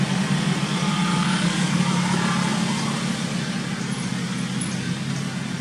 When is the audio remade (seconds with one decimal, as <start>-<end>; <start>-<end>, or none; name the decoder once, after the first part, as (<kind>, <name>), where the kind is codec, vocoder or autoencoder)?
1.1-1.8 (codec, DAC)